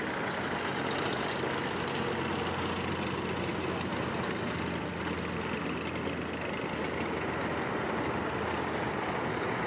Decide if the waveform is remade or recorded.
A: recorded